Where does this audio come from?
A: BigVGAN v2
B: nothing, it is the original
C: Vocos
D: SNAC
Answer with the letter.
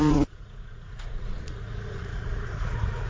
C